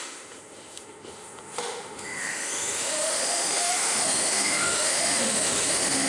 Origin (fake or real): fake